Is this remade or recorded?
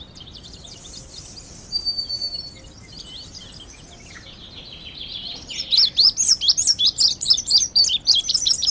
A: remade